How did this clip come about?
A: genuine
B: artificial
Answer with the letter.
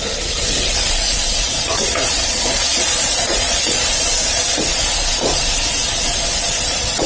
B